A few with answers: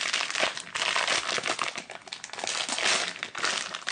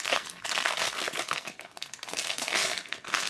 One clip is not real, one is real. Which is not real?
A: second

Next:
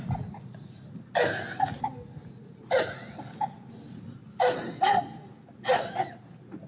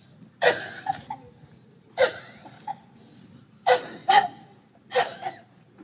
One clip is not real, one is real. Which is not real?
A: second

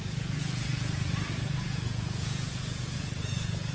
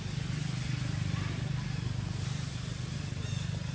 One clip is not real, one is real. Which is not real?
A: first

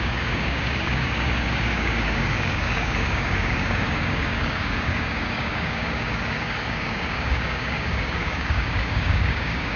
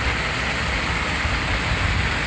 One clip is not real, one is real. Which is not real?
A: first